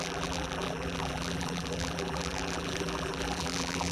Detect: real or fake fake